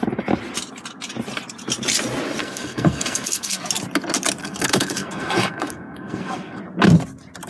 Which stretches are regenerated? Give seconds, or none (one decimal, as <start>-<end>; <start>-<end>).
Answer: 2.4-3.6; 4.4-6.6